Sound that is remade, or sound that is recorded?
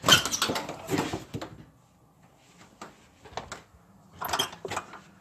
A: recorded